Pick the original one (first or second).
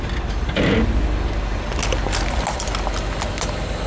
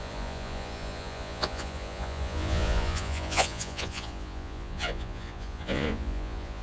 first